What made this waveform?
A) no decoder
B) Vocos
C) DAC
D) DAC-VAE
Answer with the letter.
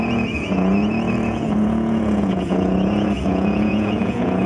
B